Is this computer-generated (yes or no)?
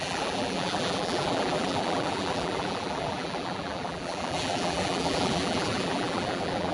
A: yes